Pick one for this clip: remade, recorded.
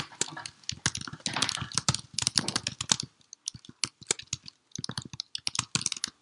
recorded